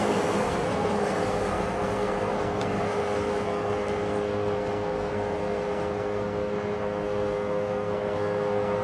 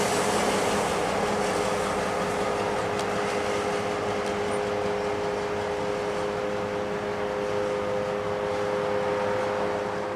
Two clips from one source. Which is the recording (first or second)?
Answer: second